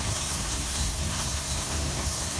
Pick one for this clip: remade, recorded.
remade